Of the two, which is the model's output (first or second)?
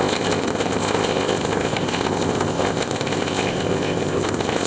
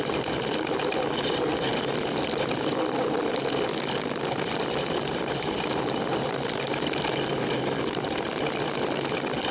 first